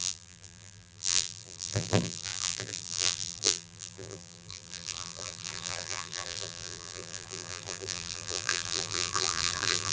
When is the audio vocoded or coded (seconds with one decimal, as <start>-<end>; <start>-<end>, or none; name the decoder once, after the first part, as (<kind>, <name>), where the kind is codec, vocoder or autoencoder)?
0.0-9.9 (vocoder, BigVGAN v2)